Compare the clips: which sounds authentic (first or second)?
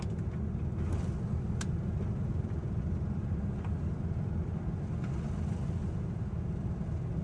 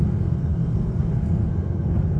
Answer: first